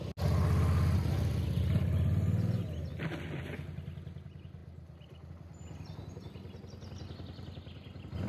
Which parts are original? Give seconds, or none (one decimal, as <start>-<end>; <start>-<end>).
0.0-8.3